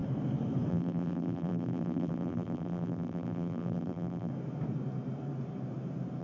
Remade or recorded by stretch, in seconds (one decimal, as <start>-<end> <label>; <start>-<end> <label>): 0.0-0.7 recorded; 0.7-4.3 remade; 4.3-6.2 recorded